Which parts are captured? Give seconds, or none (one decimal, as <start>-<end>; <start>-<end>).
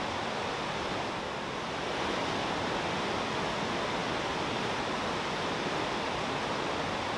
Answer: 0.0-7.2